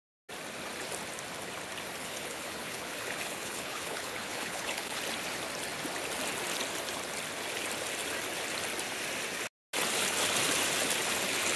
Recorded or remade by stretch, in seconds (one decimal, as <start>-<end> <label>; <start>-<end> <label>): 0.0-2.0 recorded; 2.0-5.0 remade; 5.0-11.6 recorded